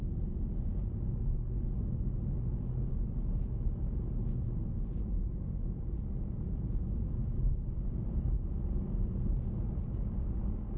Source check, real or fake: real